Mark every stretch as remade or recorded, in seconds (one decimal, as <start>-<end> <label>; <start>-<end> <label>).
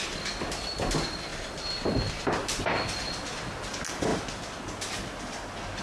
0.0-5.8 recorded